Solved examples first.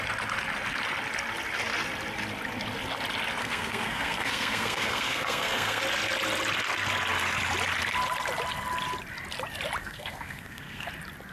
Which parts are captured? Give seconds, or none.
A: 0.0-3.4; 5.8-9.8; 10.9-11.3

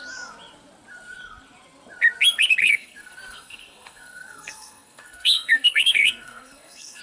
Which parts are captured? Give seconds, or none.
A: 0.0-2.6

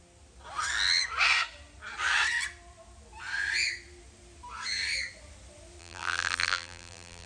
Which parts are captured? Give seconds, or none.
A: 0.0-5.8

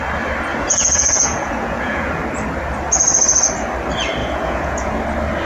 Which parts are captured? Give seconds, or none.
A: 0.0-0.5; 2.2-4.2; 4.9-5.5

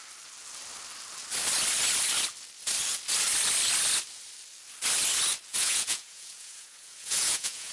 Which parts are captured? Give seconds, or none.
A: 0.0-5.5

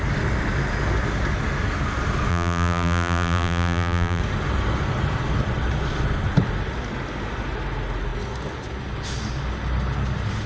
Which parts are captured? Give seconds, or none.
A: 0.0-2.3; 4.2-10.5

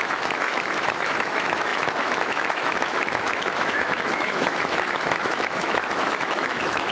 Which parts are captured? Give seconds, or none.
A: none

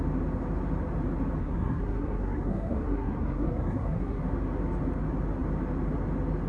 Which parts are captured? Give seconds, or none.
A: 0.0-1.4; 4.2-6.5